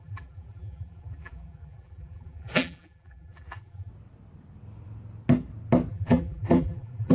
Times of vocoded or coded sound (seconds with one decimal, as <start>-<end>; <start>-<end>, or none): 0.0-3.9; 5.9-7.1